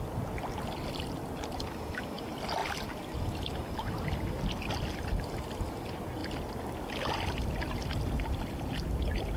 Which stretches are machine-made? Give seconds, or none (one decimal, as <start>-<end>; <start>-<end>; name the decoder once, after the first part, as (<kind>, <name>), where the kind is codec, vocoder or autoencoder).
none